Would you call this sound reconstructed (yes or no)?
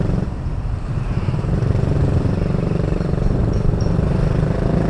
yes